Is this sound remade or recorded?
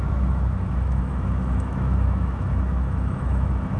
remade